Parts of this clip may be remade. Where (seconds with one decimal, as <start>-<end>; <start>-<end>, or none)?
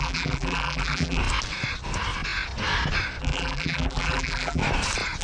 0.0-1.2; 3.2-4.6